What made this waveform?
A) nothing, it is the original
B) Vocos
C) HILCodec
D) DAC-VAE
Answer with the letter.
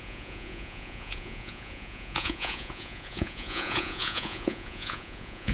B